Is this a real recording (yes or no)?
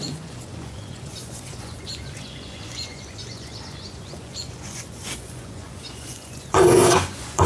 no